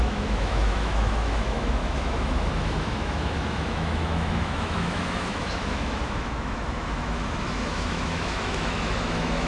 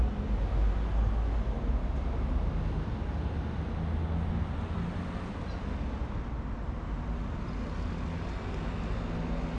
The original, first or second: second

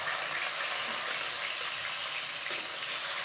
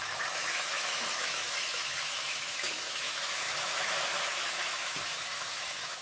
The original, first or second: first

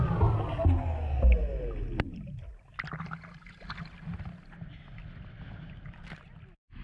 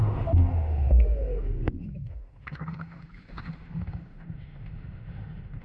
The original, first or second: first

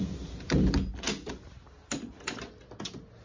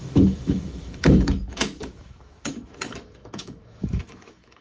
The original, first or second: first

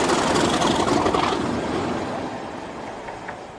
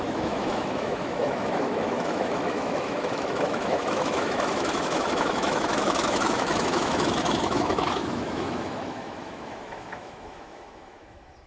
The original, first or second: first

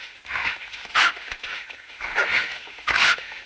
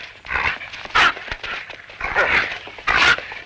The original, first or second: second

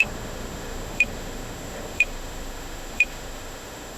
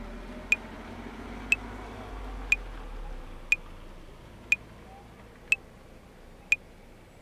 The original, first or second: second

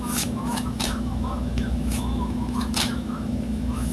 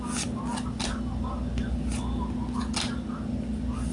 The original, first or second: second